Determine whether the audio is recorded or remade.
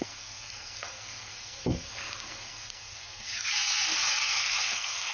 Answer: remade